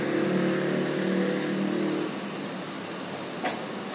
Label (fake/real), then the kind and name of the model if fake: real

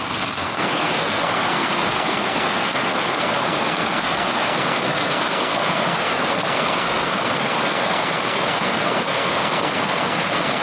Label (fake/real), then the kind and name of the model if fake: fake, codec, SNAC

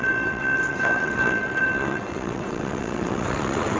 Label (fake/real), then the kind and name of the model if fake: fake, vocoder, WaveNeXt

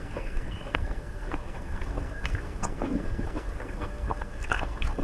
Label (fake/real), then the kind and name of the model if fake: fake, codec, SNAC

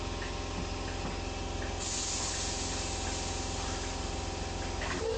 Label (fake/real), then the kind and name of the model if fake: real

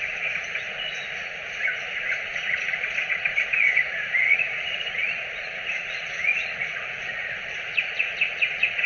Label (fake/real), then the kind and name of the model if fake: fake, vocoder, Vocos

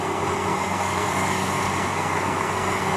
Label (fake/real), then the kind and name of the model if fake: fake, codec, SNAC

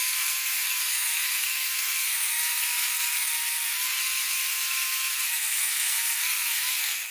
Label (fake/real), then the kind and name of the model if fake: fake, codec, SNAC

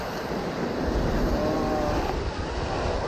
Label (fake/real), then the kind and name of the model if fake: real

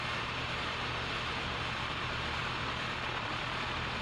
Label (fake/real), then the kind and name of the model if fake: fake, vocoder, BigVGAN v2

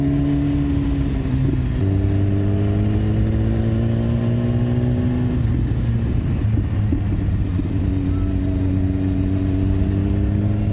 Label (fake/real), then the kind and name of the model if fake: real